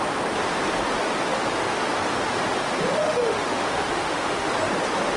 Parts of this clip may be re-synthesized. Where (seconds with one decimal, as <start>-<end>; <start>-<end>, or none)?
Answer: 3.0-4.5